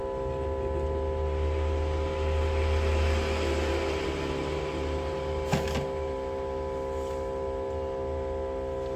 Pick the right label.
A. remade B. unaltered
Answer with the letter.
B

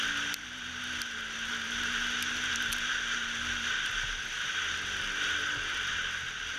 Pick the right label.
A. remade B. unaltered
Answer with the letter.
B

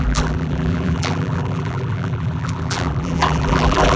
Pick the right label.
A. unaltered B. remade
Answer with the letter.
B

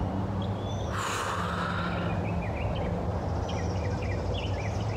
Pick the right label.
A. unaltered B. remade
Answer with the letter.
A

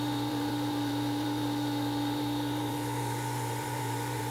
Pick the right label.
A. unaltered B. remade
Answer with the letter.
B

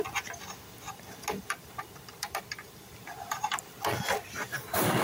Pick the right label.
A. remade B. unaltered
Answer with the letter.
B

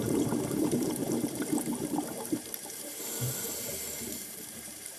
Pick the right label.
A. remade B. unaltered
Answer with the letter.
A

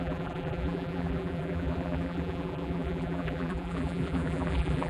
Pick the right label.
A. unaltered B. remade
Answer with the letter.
B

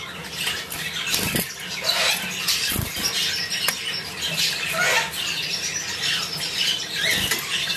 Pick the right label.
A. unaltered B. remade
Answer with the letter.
A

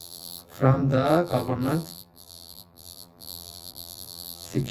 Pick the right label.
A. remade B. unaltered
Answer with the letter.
A